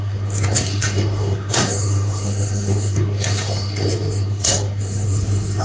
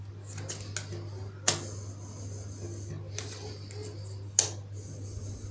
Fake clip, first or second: first